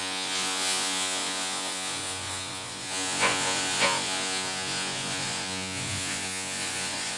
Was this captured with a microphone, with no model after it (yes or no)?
no